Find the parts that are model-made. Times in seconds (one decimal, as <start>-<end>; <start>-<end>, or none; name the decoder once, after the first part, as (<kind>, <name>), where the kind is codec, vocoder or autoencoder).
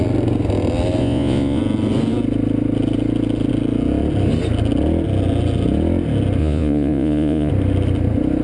1.0-1.6 (vocoder, Vocos); 6.4-7.5